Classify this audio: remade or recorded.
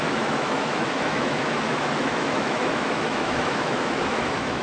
remade